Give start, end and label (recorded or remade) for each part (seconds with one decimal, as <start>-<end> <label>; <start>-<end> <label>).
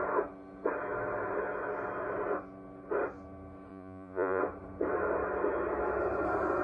0.0-3.7 recorded; 3.7-4.4 remade; 4.4-6.6 recorded